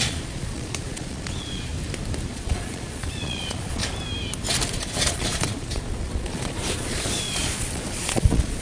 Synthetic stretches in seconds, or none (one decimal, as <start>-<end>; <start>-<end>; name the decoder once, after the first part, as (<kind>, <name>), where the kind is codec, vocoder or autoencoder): 0.0-1.7 (vocoder, Vocos); 2.3-3.8; 4.7-8.6